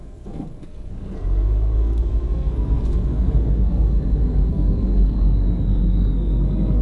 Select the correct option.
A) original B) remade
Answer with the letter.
B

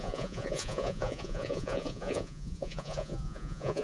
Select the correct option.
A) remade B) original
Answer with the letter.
A